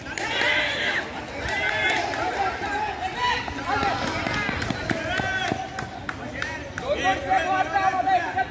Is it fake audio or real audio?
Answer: real